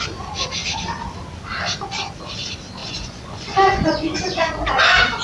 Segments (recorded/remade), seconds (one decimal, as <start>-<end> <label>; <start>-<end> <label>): 0.0-2.8 recorded; 2.8-4.5 remade; 4.5-5.2 recorded